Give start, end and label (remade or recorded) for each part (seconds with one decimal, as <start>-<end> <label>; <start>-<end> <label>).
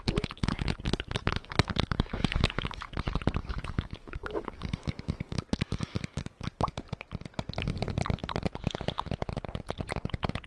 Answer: 0.0-0.4 recorded; 0.4-2.9 remade; 2.9-3.4 recorded; 3.4-6.7 remade; 6.7-10.5 recorded